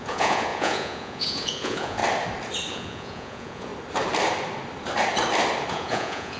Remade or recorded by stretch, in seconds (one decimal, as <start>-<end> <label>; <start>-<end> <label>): 0.0-2.0 remade; 2.0-2.7 recorded; 2.7-3.7 remade; 3.7-5.7 recorded; 5.7-6.4 remade